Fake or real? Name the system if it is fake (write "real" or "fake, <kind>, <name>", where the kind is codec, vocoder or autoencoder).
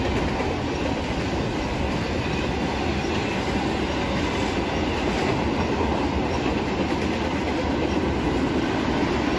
real